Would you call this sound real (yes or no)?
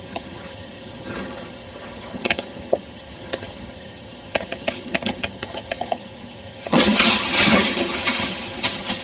no